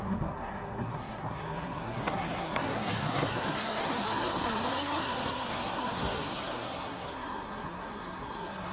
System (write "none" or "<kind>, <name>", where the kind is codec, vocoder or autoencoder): codec, SNAC